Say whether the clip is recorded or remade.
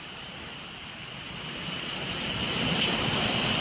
recorded